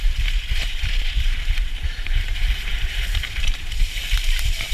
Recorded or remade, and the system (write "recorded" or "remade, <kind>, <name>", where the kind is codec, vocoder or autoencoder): remade, vocoder, BigVGAN v2